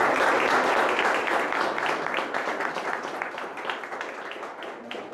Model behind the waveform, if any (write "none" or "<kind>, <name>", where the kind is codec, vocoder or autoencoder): none